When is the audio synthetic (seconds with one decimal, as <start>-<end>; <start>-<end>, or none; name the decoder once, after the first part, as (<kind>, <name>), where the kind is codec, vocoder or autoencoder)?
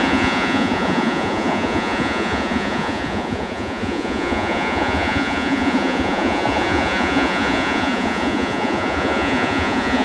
0.0-10.0 (vocoder, Vocos)